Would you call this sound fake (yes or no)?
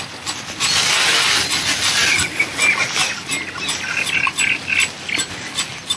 no